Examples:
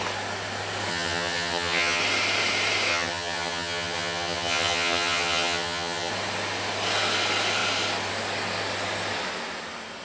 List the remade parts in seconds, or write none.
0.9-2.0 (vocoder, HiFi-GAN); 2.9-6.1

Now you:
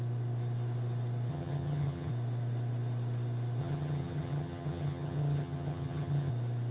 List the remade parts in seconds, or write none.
1.3-2.1 (vocoder, HiFi-GAN); 3.6-6.3

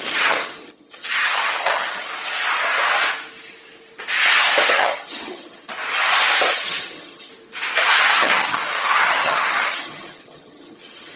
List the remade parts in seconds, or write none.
0.0-2.1 (vocoder, HiFi-GAN); 4.7-5.7; 6.5-7.3; 8.0-11.2

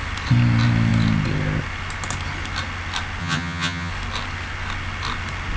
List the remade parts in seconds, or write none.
3.2-3.9 (vocoder, HiFi-GAN)

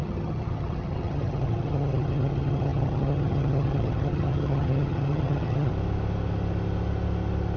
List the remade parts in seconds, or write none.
0.0-5.7 (vocoder, HiFi-GAN)